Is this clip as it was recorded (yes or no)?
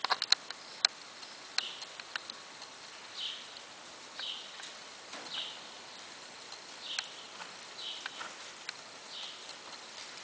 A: yes